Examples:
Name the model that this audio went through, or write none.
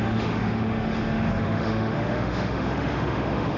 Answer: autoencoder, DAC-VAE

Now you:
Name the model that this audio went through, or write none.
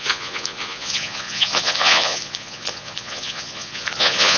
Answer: vocoder, Vocos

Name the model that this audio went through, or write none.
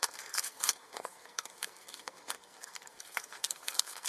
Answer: codec, SNAC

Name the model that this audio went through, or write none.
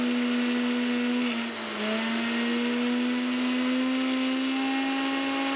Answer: none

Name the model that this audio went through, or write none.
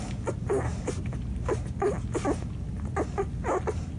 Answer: none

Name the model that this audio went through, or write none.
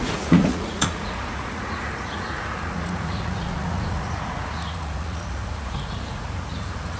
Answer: vocoder, Vocos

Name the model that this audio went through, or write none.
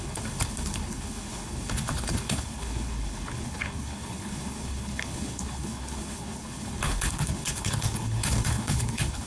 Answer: codec, HILCodec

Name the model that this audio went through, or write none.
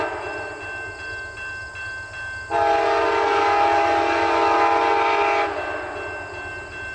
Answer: none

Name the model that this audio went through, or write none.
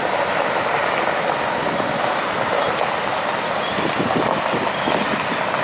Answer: none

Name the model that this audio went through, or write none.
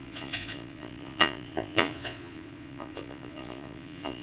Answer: vocoder, Vocos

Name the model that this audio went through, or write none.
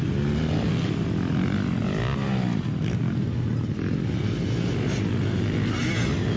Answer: none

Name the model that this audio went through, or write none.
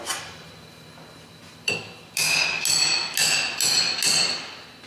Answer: none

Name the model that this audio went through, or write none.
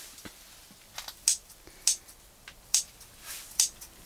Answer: none